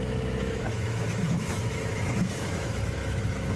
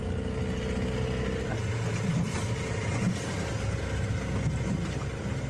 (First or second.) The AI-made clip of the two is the first